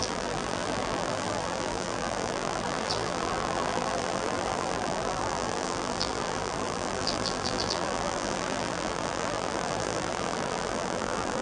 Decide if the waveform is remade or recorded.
remade